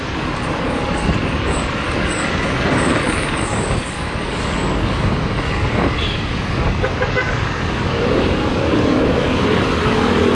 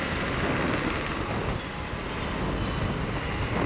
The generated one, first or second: first